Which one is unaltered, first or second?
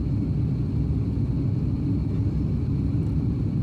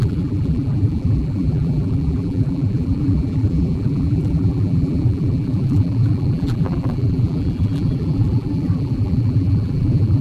first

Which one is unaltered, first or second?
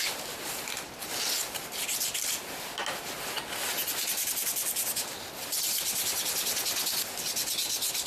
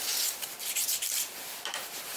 first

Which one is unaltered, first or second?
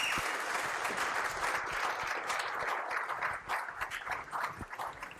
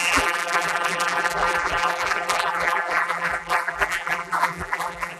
first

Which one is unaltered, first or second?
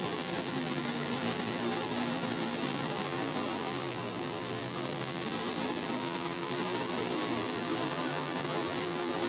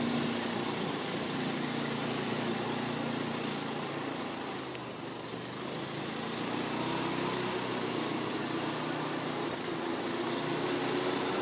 second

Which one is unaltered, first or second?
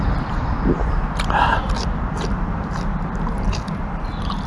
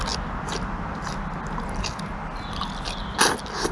second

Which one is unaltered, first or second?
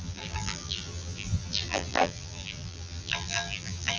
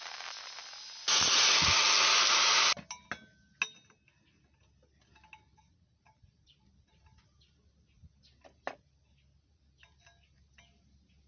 second